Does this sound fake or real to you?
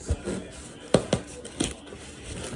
real